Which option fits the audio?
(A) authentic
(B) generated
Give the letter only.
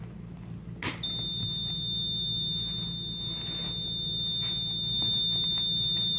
A